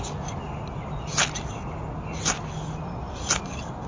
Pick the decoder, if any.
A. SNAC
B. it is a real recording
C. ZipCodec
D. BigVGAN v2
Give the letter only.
B